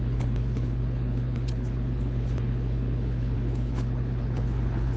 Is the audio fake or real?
fake